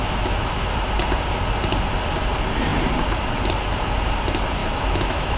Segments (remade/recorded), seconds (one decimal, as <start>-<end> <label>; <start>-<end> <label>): 0.0-0.5 remade; 0.5-4.6 recorded; 4.6-5.4 remade